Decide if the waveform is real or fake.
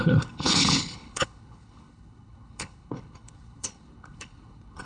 fake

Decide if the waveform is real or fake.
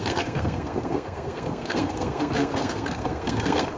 fake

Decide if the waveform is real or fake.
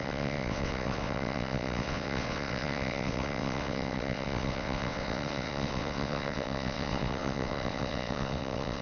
fake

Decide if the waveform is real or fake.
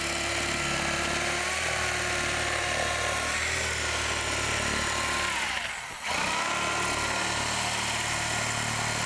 real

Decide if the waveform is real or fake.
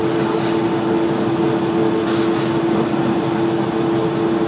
real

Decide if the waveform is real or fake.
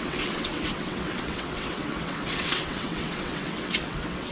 fake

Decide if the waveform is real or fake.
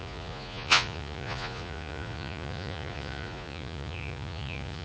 fake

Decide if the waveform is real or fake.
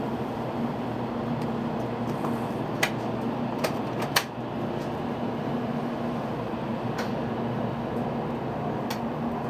real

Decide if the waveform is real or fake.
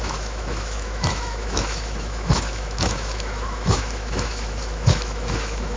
fake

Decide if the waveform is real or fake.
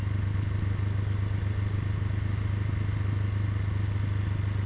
real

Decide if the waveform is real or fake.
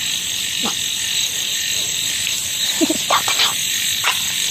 real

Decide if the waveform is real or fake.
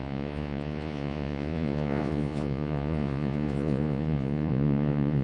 fake